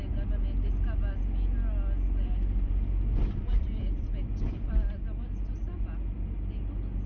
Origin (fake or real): real